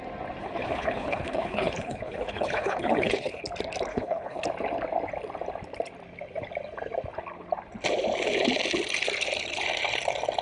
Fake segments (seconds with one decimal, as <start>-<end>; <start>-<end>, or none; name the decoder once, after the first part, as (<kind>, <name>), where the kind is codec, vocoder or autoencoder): 0.4-3.4 (codec, HILCodec); 3.9-4.4